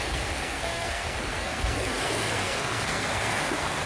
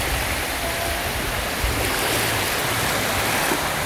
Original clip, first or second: second